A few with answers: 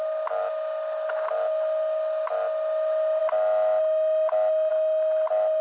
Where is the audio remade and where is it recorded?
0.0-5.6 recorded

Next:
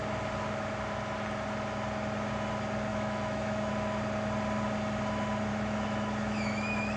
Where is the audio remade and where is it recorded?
0.0-2.9 recorded; 2.9-3.7 remade; 3.7-5.5 recorded; 5.5-7.0 remade

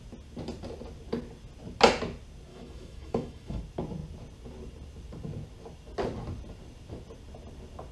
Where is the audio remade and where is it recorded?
0.0-2.5 recorded; 2.5-3.6 remade; 3.6-7.9 recorded